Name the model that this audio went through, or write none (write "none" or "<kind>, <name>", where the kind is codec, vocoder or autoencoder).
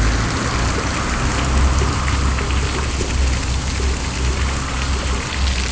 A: none